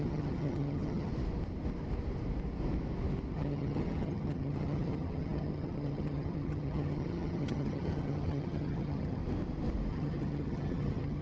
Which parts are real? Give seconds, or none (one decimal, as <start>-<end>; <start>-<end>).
1.1-3.3; 9.2-9.9